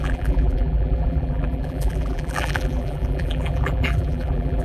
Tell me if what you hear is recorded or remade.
remade